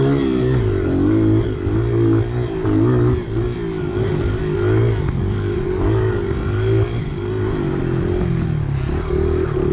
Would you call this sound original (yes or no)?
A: yes